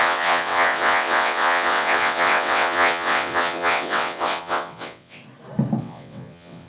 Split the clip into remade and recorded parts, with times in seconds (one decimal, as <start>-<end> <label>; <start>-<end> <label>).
0.0-5.2 remade; 5.2-5.8 recorded; 5.8-6.7 remade